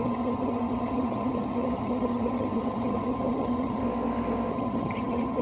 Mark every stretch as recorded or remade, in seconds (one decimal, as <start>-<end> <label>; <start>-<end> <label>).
0.0-3.8 remade; 3.8-4.5 recorded; 4.5-5.4 remade